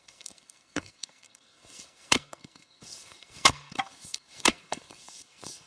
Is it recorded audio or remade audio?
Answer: remade